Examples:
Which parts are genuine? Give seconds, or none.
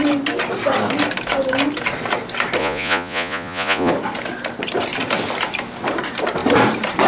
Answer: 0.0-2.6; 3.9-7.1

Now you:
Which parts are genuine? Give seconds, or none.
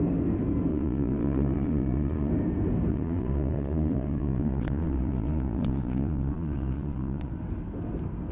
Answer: 0.0-0.7; 2.3-2.9; 7.3-8.3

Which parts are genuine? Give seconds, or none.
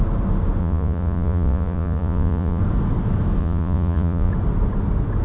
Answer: 0.0-0.6; 2.6-3.4; 4.3-5.2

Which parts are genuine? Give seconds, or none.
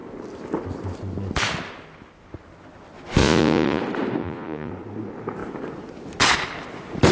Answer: 0.0-3.2; 3.8-4.2; 4.7-7.1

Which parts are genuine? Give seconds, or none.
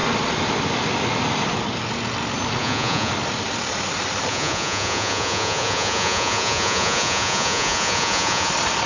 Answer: 0.0-2.6; 3.1-4.3; 8.5-8.9